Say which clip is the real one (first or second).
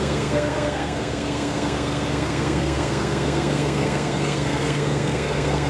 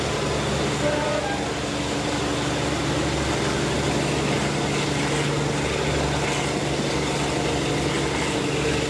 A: second